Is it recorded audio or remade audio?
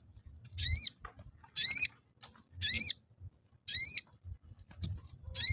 recorded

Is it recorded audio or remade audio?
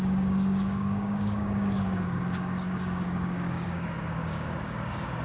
remade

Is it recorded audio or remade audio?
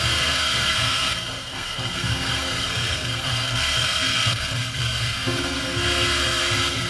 remade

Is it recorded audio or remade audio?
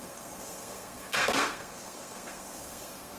remade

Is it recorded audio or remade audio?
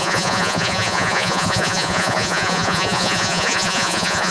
remade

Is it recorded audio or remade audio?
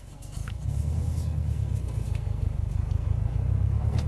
remade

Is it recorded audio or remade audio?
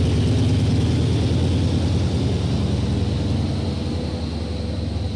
recorded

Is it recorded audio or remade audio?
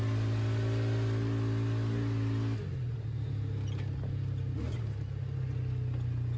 recorded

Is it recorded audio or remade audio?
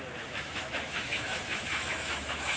remade